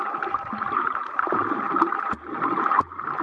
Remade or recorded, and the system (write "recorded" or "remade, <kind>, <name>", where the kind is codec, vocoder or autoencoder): remade, vocoder, BigVGAN v2